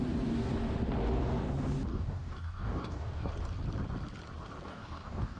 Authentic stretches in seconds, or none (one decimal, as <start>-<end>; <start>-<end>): 0.0-1.9; 3.3-4.7